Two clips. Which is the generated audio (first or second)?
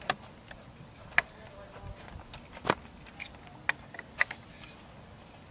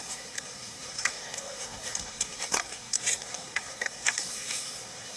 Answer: second